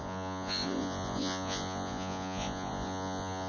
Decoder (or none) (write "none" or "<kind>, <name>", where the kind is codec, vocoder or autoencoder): vocoder, Vocos